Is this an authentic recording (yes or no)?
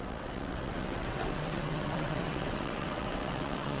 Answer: no